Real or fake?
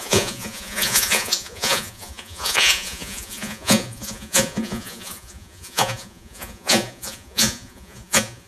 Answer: fake